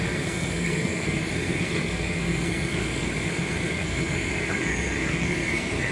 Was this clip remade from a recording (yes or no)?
yes